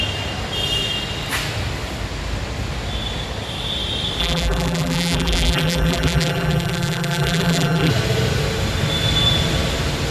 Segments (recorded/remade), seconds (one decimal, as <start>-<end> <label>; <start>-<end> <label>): 0.0-4.2 recorded; 4.2-7.9 remade; 7.9-10.1 recorded